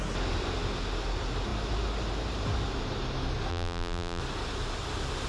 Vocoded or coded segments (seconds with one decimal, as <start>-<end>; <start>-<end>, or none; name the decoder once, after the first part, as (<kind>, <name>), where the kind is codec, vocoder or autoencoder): 3.5-4.2 (vocoder, BigVGAN v2)